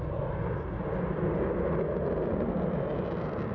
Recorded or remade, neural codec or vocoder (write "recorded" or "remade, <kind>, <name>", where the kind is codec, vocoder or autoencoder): recorded